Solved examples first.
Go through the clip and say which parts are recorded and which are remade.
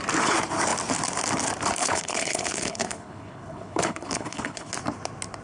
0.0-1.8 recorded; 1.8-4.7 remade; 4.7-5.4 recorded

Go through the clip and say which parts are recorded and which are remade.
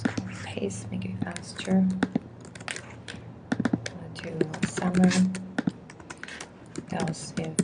0.0-7.6 recorded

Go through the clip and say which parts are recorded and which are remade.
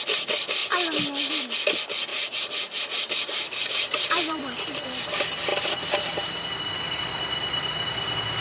0.0-2.1 recorded; 2.1-4.4 remade; 4.4-8.4 recorded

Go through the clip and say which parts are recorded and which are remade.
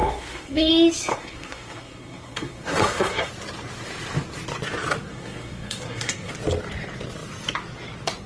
0.0-0.7 remade; 0.7-1.1 recorded; 1.1-3.3 remade; 3.3-5.1 recorded; 5.1-6.3 remade; 6.3-8.3 recorded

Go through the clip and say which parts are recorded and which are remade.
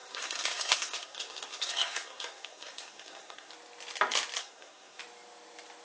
0.0-3.5 remade; 3.5-4.4 recorded; 4.4-5.0 remade; 5.0-5.8 recorded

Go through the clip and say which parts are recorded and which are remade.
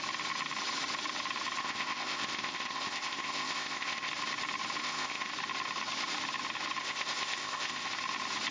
0.0-1.6 recorded; 1.6-4.1 remade; 4.1-4.8 recorded; 4.8-5.3 remade; 5.3-6.8 recorded; 6.8-7.9 remade; 7.9-8.5 recorded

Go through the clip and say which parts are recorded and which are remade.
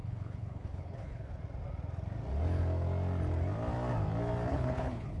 0.0-1.4 remade; 1.4-4.5 recorded; 4.5-5.2 remade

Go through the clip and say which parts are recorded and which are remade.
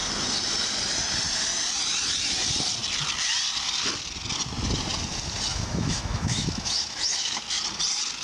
0.0-5.5 recorded; 5.5-7.4 remade; 7.4-8.2 recorded